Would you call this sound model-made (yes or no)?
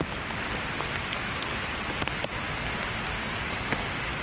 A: no